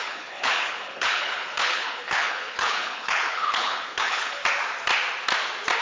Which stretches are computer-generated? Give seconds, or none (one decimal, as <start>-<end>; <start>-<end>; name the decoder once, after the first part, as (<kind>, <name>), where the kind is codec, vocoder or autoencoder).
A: 0.0-4.4 (codec, HILCodec)